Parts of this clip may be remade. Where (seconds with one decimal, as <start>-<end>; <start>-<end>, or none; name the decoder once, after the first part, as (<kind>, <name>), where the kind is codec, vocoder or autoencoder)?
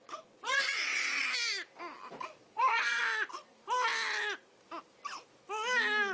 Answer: 0.0-1.2 (vocoder, Vocos); 2.4-3.0